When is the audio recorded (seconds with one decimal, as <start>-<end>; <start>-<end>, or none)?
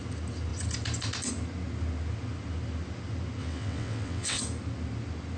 0.0-3.4; 4.4-5.4